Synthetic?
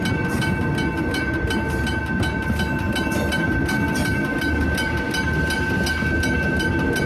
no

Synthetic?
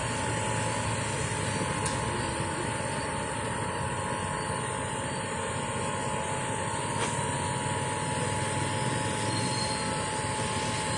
no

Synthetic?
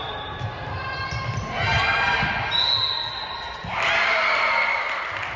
no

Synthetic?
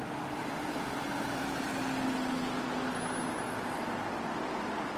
no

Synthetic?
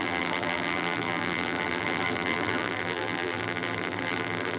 yes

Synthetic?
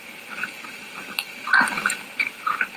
yes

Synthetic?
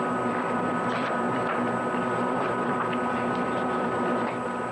yes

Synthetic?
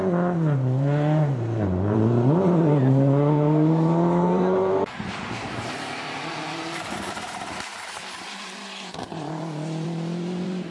yes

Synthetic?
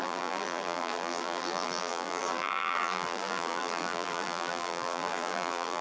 yes